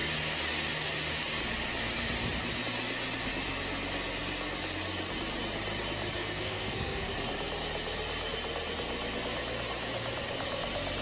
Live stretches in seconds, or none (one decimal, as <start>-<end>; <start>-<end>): 0.0-6.2; 7.1-11.0